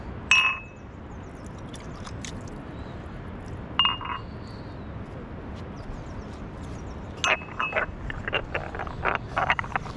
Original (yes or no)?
yes